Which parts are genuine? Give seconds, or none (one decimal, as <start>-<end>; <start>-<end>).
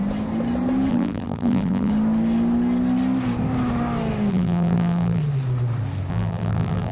0.0-0.9; 1.9-4.3; 5.2-6.1